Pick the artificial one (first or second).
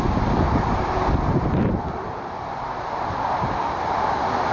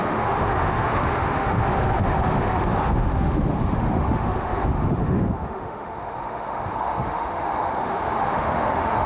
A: second